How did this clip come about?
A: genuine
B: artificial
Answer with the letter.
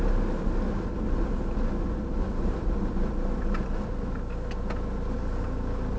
A